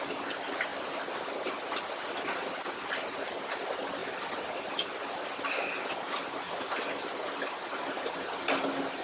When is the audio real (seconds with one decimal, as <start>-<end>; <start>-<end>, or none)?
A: 0.0-9.0